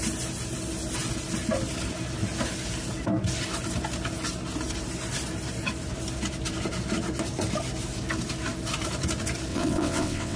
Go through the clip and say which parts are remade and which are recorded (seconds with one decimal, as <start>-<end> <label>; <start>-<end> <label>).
0.0-9.5 recorded; 9.5-10.4 remade